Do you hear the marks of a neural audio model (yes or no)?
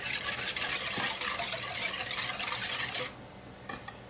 no